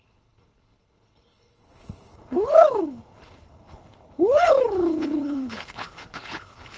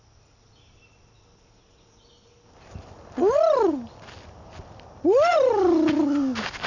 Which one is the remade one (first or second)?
first